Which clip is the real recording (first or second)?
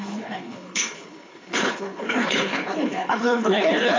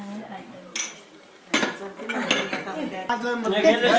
second